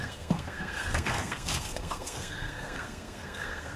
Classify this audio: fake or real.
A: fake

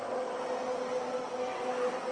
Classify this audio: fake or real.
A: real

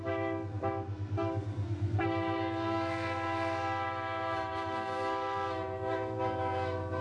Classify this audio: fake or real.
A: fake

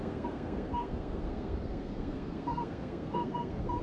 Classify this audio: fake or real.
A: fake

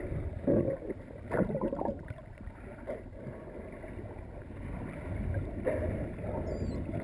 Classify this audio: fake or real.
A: real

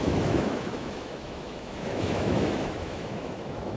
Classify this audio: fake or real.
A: fake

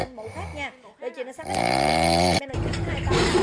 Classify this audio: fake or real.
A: real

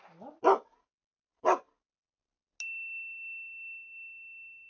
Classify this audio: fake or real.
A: real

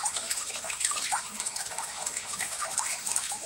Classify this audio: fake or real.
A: fake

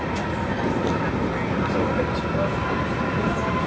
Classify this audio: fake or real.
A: real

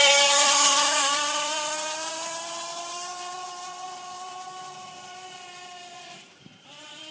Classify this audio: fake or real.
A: fake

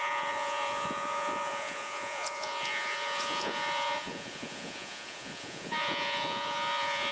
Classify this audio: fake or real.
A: fake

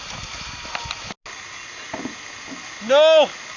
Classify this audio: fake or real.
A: real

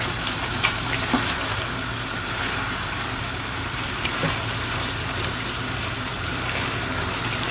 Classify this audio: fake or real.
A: fake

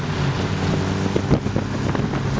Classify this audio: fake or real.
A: real